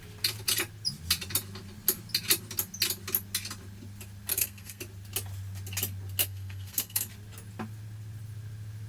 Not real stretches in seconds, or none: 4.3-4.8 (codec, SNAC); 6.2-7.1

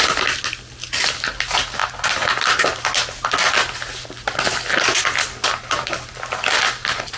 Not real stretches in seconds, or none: none

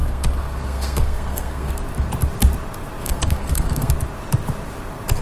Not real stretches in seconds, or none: 0.0-1.7 (codec, SNAC); 3.0-3.9

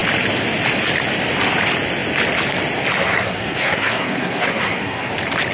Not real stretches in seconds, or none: 3.0-5.1 (codec, SNAC)

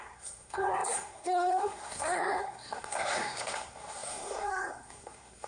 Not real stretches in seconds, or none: 0.0-5.5 (codec, SNAC)